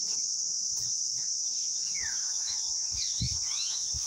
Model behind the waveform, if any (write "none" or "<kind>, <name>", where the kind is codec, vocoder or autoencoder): autoencoder, DAC-VAE